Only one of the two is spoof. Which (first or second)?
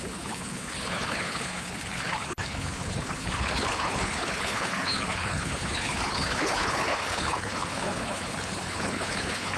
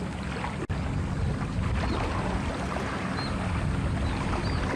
first